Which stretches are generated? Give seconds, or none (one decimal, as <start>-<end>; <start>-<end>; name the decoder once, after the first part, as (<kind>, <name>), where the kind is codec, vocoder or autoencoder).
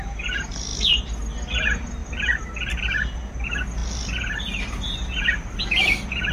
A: 0.7-1.2 (vocoder, BigVGAN v2); 2.0-2.7